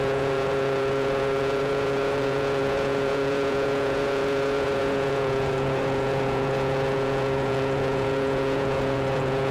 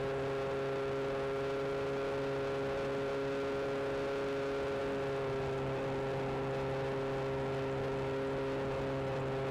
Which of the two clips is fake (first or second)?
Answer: first